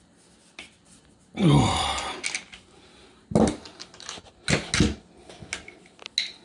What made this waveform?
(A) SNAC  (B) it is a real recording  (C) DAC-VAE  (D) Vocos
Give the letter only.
B